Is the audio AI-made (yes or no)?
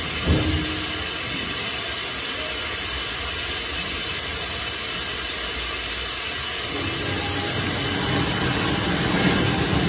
no